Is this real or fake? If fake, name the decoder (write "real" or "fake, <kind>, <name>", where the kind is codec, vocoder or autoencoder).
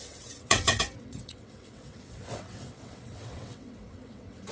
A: fake, vocoder, WaveNeXt